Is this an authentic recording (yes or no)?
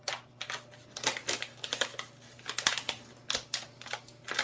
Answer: yes